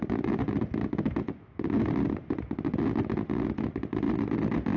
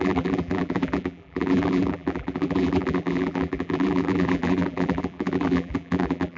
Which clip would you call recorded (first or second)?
first